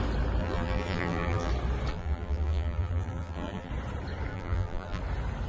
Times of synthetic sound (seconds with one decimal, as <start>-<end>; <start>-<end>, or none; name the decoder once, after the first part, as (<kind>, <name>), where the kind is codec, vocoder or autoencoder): 0.4-1.5 (vocoder, BigVGAN v2); 1.9-3.7; 4.3-5.0